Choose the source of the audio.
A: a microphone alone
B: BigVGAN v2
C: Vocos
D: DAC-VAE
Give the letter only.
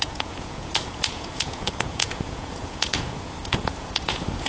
C